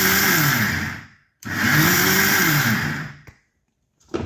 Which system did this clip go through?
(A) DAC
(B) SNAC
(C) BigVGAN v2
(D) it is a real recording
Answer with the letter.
C